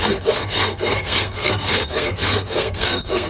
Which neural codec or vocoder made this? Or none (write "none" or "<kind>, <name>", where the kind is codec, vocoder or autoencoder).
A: codec, SNAC